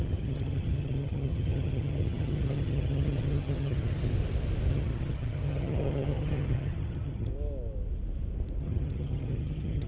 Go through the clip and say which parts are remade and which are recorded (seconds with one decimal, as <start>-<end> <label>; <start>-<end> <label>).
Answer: 0.0-4.1 remade; 4.1-4.7 recorded; 4.7-7.3 remade; 7.3-8.6 recorded; 8.6-9.9 remade